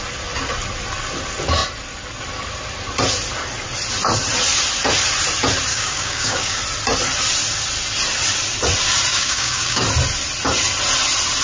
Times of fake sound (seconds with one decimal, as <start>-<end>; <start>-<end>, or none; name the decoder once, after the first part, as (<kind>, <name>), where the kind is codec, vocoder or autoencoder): 5.7-6.6 (codec, DAC); 9.1-9.8